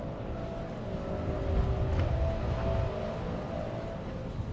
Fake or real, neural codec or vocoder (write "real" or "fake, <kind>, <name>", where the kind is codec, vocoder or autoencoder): real